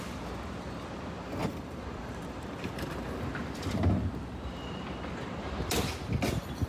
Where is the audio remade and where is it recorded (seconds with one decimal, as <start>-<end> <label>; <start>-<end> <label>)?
0.0-1.4 recorded; 1.4-2.7 remade; 2.7-6.7 recorded